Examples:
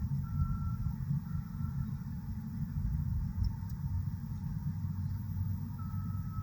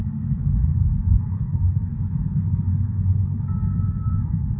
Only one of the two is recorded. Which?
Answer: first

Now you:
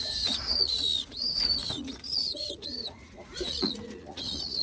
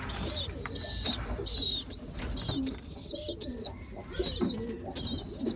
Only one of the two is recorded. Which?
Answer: second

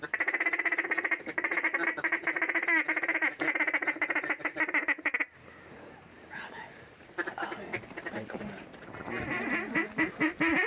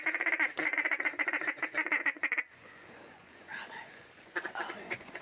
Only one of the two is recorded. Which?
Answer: first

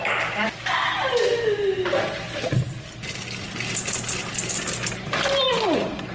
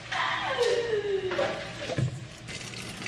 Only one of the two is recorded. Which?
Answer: second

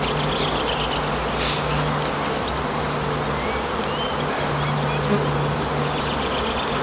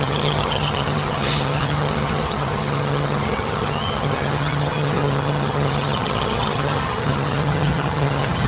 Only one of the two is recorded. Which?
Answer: first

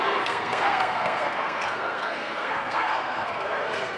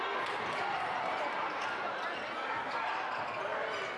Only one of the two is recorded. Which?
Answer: second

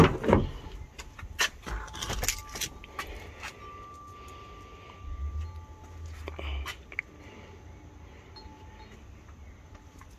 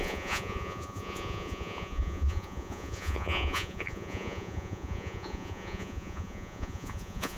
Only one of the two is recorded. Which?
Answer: first